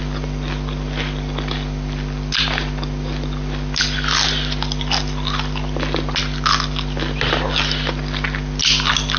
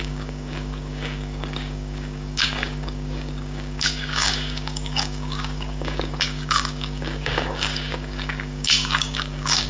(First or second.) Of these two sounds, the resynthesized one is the second